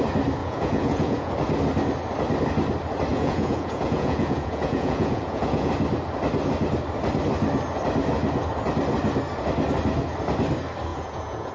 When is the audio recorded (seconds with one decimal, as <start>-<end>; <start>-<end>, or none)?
0.0-0.4; 1.3-3.1; 5.7-10.9